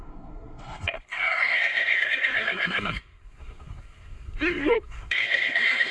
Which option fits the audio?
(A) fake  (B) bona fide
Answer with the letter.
A